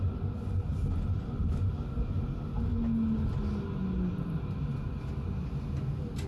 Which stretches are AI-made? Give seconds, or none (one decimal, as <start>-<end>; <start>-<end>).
0.7-1.7